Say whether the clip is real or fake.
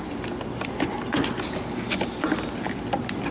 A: real